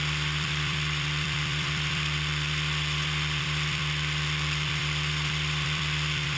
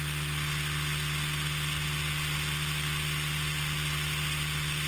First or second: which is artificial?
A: first